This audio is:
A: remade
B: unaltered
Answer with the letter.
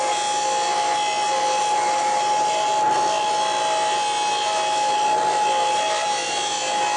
B